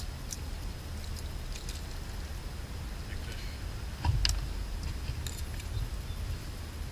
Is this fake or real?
real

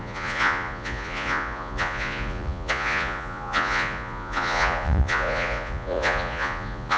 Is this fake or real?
fake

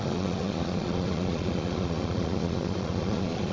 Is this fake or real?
fake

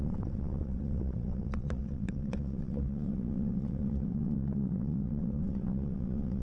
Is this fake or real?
fake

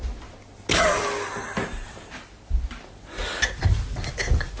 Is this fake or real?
real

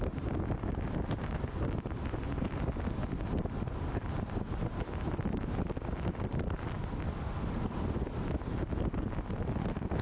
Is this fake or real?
real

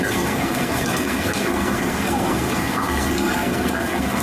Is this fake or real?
fake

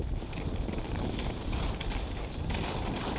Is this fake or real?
real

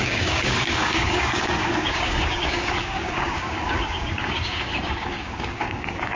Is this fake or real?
fake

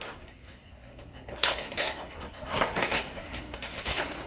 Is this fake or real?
fake